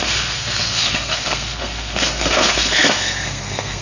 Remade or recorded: remade